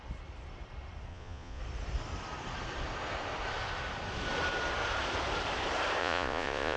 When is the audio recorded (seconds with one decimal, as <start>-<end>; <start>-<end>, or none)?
0.0-1.1; 1.6-6.0